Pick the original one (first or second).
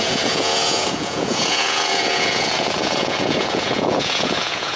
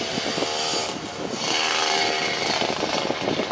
second